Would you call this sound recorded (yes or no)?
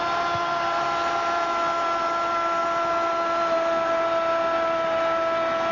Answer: yes